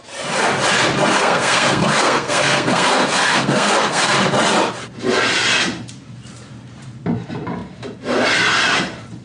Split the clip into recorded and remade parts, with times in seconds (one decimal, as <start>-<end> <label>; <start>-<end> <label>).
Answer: 0.0-1.2 recorded; 1.2-4.1 remade; 4.1-9.2 recorded